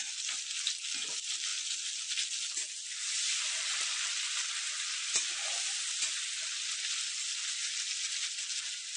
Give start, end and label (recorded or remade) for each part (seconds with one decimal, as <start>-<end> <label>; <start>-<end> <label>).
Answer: 0.0-9.0 recorded